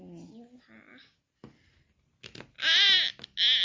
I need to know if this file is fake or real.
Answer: real